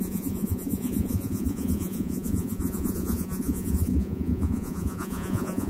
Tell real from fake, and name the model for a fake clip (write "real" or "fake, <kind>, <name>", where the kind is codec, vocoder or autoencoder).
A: fake, vocoder, Vocos